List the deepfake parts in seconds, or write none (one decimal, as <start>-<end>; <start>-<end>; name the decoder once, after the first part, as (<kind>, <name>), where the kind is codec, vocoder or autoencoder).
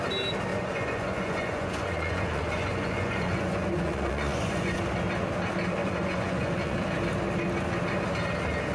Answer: 0.5-4.8 (vocoder, Vocos); 5.8-6.8